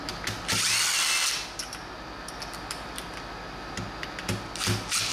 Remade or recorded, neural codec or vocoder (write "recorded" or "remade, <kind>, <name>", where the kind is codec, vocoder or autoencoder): recorded